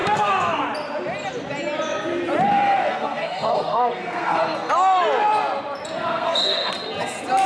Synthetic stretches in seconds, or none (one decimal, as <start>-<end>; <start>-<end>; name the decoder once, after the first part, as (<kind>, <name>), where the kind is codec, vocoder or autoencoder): 0.0-0.6 (codec, SNAC); 2.5-4.7; 6.1-6.7